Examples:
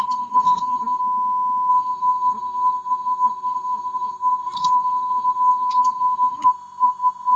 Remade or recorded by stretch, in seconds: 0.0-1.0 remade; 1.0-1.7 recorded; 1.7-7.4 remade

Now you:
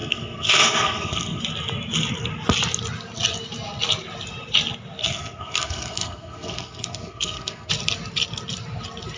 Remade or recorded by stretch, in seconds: 0.0-1.4 remade; 1.4-5.0 recorded; 5.0-7.7 remade; 7.7-9.2 recorded

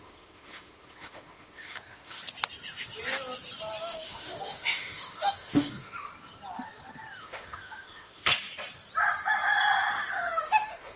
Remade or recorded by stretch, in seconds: 0.0-2.2 remade; 2.2-3.8 recorded; 3.8-6.1 remade; 6.1-7.2 recorded; 7.2-8.3 remade; 8.3-9.9 recorded; 9.9-11.0 remade

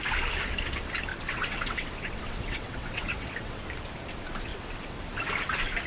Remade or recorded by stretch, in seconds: 0.0-1.1 recorded; 1.1-3.6 remade; 3.6-4.5 recorded; 4.5-5.1 remade; 5.1-5.9 recorded

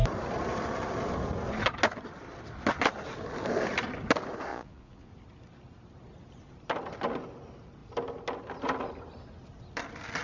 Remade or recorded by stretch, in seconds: 0.0-4.5 recorded; 4.5-5.1 remade; 5.1-10.2 recorded

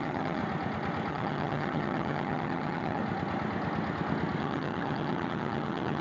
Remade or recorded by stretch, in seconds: 0.0-0.4 remade; 0.4-1.1 recorded; 1.1-3.0 remade; 3.0-4.4 recorded; 4.4-6.0 remade

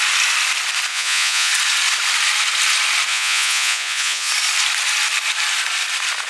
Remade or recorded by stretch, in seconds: 0.0-0.9 recorded; 0.9-1.5 remade; 1.5-3.1 recorded; 3.1-4.3 remade; 4.3-6.3 recorded